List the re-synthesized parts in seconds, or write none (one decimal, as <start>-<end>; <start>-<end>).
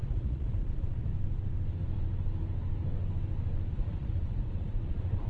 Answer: 0.0-1.1; 3.7-5.3